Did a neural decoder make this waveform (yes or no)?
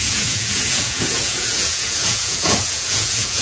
yes